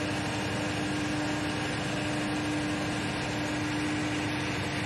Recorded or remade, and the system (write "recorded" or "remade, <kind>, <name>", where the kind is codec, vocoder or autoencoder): recorded